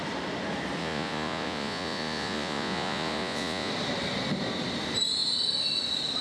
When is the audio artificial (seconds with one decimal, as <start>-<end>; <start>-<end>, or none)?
0.8-3.7